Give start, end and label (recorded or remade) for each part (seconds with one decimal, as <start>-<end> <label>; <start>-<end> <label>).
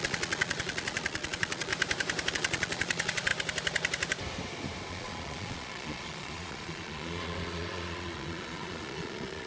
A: 0.0-1.7 remade; 1.7-2.3 recorded; 2.3-3.3 remade; 3.3-4.9 recorded; 4.9-9.5 remade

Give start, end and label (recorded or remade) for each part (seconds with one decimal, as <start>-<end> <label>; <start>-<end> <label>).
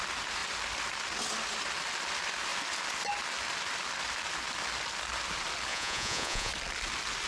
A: 0.0-5.7 recorded; 5.7-6.5 remade; 6.5-7.3 recorded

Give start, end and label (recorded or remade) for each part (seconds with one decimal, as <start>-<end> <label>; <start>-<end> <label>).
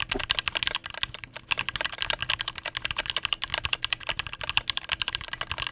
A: 0.0-5.7 recorded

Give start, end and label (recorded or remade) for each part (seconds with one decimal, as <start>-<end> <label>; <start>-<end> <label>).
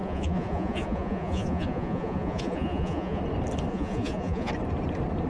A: 0.0-3.2 remade; 3.2-3.7 recorded; 3.7-4.5 remade; 4.5-5.3 recorded